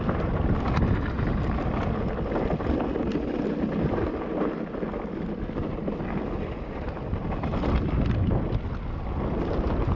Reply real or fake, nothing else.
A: real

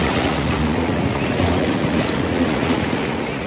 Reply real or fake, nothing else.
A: fake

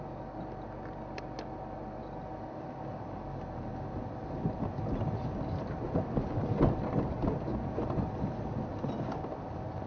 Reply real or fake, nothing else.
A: real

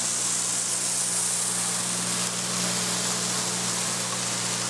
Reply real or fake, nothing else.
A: real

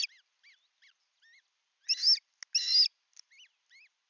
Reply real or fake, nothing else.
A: real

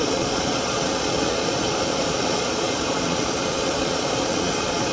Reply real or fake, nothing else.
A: fake